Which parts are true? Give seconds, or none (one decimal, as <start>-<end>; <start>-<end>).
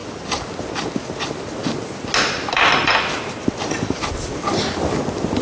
0.5-3.4; 4.0-5.4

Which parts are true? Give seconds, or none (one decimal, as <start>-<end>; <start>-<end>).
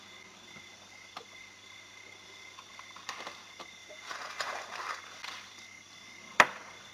0.0-3.8; 5.0-6.9